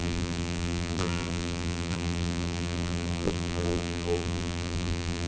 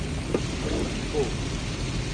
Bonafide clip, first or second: second